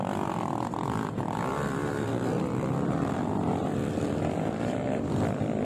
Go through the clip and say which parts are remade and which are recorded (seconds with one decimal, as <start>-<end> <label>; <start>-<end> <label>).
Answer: 0.0-1.8 remade; 1.8-2.4 recorded; 2.4-5.6 remade